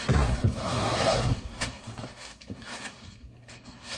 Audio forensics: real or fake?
fake